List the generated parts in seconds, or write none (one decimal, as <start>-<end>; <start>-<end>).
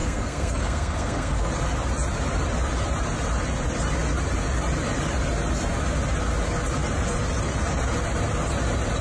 0.0-1.5